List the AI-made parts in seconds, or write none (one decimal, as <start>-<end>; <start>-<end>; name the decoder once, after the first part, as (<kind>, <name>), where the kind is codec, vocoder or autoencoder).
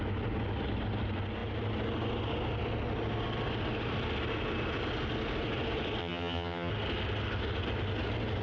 6.0-6.7 (vocoder, HiFi-GAN)